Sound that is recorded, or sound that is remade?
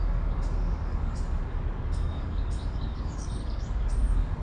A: remade